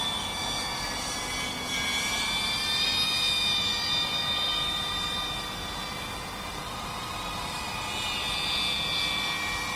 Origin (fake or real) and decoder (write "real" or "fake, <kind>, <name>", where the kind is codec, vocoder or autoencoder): real